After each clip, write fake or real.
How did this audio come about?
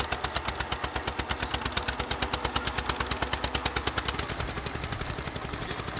real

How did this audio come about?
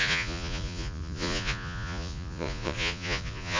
fake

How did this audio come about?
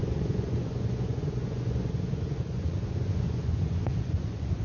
fake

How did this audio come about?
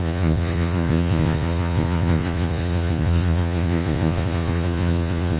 fake